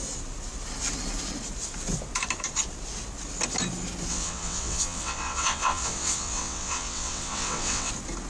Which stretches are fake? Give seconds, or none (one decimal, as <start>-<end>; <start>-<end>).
4.1-7.9